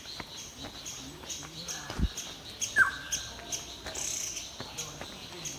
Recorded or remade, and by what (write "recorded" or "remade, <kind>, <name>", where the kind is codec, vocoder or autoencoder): recorded